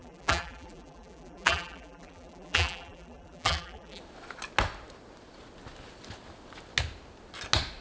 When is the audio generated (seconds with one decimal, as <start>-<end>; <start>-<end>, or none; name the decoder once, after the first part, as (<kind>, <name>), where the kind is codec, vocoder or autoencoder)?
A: 0.0-4.0 (vocoder, BigVGAN v2)